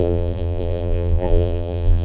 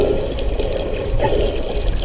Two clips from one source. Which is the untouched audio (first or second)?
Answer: second